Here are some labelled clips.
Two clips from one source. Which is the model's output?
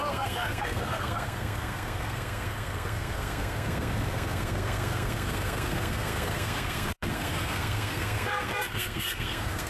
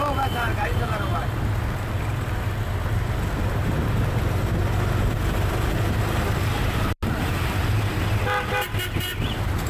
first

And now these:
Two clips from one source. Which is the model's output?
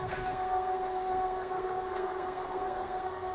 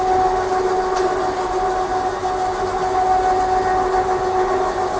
first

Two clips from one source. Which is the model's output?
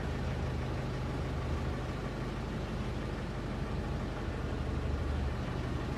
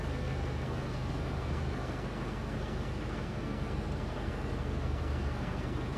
second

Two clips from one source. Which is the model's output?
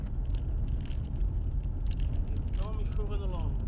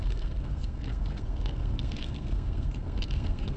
second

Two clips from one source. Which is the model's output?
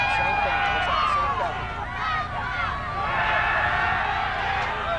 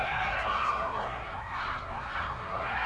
second